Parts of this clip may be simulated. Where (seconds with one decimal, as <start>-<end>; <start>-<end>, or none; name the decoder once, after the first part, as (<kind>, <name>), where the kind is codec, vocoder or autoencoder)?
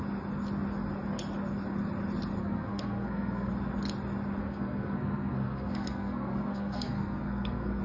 2.4-3.5 (codec, SNAC); 4.4-7.8